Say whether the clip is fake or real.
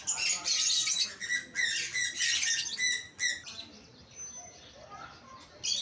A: real